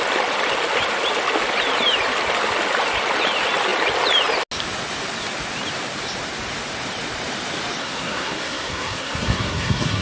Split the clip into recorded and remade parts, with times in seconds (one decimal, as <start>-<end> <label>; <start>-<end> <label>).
0.0-7.8 recorded; 7.8-10.0 remade